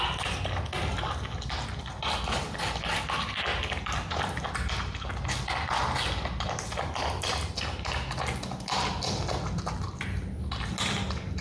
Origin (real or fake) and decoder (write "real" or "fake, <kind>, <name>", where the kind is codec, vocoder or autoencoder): real